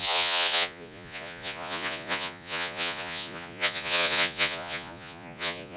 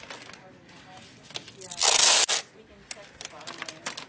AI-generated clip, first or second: first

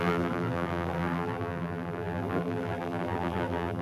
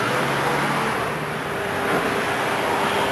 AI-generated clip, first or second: first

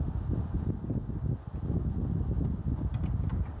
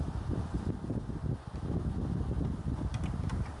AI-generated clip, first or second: second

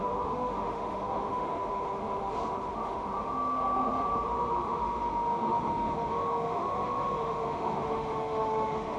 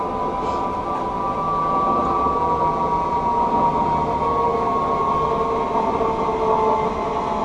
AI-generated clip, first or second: first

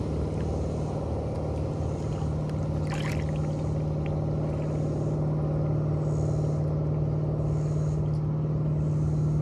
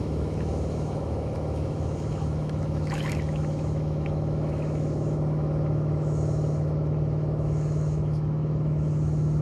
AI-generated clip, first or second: second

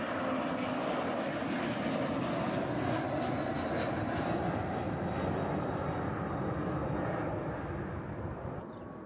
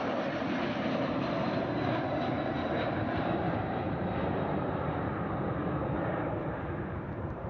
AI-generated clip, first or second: second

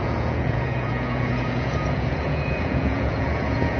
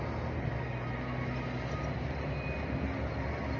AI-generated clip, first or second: first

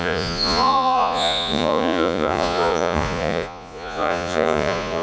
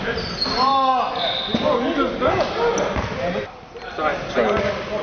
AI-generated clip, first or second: first